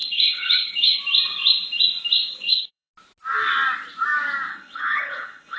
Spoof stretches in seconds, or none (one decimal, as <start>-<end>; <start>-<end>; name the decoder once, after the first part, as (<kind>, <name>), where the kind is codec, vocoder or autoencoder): 0.0-1.0 (codec, HILCodec); 2.3-2.9; 4.5-5.6